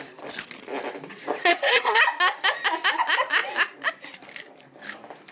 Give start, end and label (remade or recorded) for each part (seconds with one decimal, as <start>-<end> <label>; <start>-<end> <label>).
0.0-1.5 recorded; 1.5-2.0 remade; 2.0-5.3 recorded

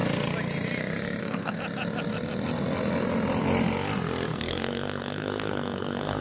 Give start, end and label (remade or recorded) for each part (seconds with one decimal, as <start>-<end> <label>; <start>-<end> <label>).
0.0-1.2 recorded; 1.2-1.6 remade; 1.6-4.3 recorded; 4.3-6.2 remade